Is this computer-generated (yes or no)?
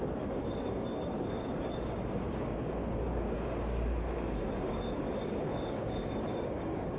yes